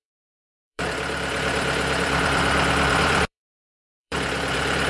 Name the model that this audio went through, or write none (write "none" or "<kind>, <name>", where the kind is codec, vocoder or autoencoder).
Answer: vocoder, BigVGAN v2